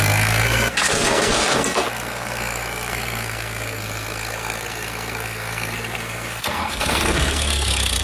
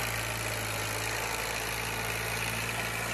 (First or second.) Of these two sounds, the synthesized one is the first